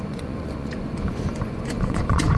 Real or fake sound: fake